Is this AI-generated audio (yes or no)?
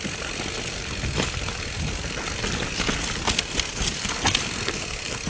no